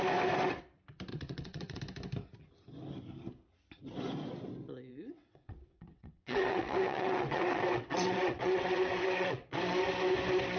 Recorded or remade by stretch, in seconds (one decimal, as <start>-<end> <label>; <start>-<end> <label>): 0.0-1.1 recorded; 1.1-1.8 remade; 1.8-4.9 recorded; 4.9-9.6 remade; 9.6-10.6 recorded